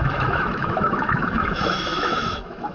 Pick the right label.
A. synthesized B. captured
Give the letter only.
A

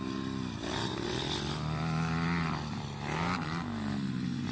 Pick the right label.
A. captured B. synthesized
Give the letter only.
A